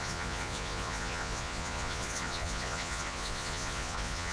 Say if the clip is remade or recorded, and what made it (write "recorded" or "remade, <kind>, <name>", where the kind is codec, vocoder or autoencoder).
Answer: remade, vocoder, Vocos